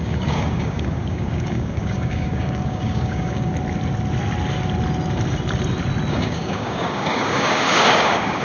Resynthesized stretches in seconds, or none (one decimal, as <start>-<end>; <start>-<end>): 0.0-3.5; 6.1-8.4